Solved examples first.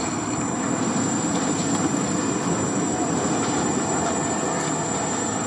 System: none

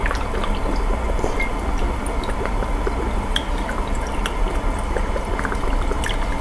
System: none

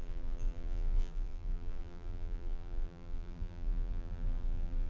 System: vocoder, BigVGAN v2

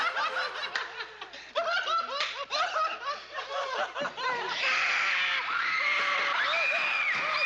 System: vocoder, BigVGAN v2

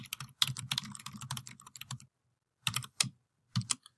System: none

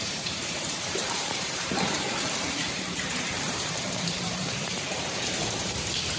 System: vocoder, BigVGAN v2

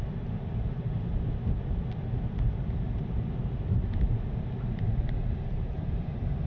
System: vocoder, BigVGAN v2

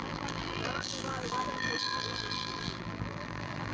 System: vocoder, BigVGAN v2